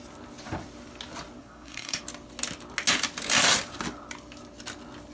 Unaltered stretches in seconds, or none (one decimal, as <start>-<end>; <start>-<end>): 0.0-1.4; 2.0-5.1